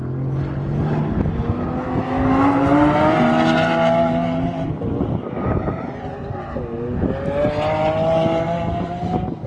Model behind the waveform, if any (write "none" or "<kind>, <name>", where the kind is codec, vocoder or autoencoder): none